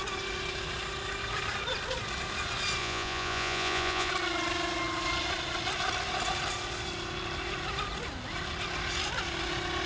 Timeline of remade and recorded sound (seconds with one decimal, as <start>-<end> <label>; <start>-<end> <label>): 0.0-2.8 recorded; 2.8-4.1 remade; 4.1-9.9 recorded

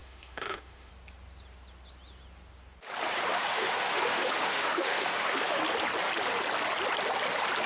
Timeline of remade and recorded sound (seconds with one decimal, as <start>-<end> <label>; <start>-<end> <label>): 0.0-0.9 remade; 0.9-3.3 recorded; 3.3-5.6 remade; 5.6-7.7 recorded

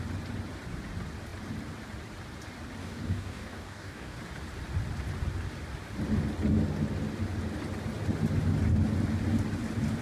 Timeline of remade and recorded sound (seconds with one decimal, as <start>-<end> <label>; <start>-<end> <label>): 0.0-2.8 recorded; 2.8-4.2 remade; 4.2-10.0 recorded

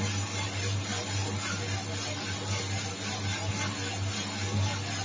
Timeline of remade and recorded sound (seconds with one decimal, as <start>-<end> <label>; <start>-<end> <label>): 0.0-5.0 recorded

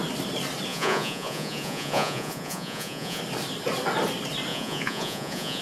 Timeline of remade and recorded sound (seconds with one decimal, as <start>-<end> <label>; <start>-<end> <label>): 0.0-0.7 recorded; 0.7-3.2 remade; 3.2-4.5 recorded; 4.5-5.6 remade

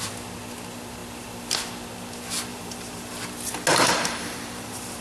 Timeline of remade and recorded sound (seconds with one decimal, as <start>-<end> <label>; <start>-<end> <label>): 0.0-2.5 recorded; 2.5-3.1 remade; 3.1-3.7 recorded; 3.7-5.0 remade

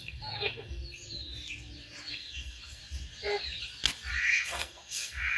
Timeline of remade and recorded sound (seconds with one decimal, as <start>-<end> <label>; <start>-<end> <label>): 0.0-0.8 remade; 0.8-2.1 recorded; 2.1-2.8 remade; 2.8-4.2 recorded; 4.2-5.4 remade

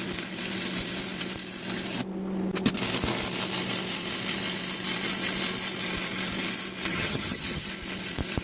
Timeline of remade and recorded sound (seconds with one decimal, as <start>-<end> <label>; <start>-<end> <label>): 0.0-6.9 recorded; 6.9-7.7 remade; 7.7-8.4 recorded